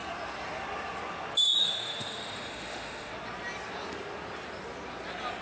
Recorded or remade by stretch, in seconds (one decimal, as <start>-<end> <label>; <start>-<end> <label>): 0.0-1.6 recorded; 1.6-3.1 remade; 3.1-5.4 recorded